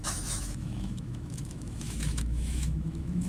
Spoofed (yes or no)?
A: yes